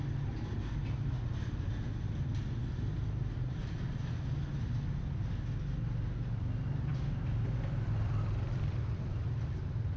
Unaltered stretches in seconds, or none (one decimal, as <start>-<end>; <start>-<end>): 0.0-6.9; 9.3-10.0